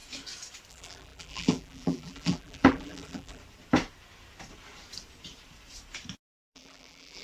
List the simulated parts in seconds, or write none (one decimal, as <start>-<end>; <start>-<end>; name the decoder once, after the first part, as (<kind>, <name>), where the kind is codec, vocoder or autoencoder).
0.7-3.4 (vocoder, BigVGAN v2); 6.4-7.2